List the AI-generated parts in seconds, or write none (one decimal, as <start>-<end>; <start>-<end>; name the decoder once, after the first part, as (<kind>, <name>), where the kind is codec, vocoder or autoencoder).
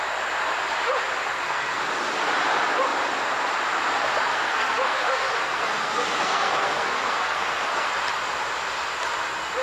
1.3-1.8 (codec, SNAC); 4.3-7.9